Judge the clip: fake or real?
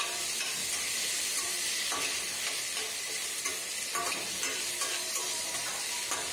fake